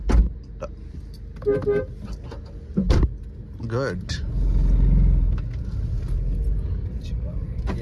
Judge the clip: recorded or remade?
recorded